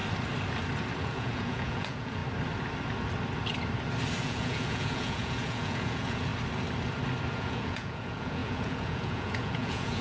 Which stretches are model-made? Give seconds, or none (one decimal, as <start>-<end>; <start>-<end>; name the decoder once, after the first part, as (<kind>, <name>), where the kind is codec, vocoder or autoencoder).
1.0-2.2 (vocoder, Vocos); 4.2-6.3; 7.3-10.0